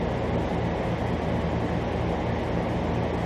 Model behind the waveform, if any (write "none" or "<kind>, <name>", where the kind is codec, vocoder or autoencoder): none